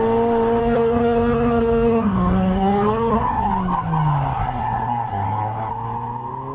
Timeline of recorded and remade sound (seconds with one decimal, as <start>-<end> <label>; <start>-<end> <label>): 0.0-0.6 recorded; 0.6-3.5 remade; 3.5-4.3 recorded; 4.3-5.7 remade; 5.7-6.5 recorded